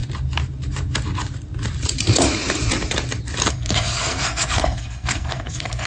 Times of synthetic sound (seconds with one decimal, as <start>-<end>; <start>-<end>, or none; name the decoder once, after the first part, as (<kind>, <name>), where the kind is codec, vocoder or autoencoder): 3.5-5.9 (codec, SNAC)